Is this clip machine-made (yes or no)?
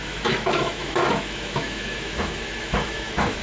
yes